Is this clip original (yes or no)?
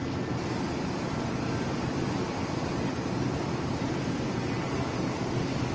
yes